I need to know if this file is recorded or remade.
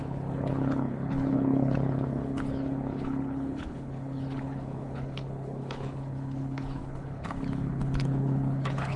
remade